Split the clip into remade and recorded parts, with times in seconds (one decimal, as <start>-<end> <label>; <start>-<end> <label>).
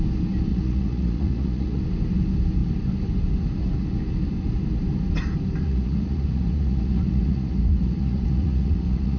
0.0-0.5 recorded; 0.5-1.8 remade; 1.8-5.6 recorded; 5.6-9.2 remade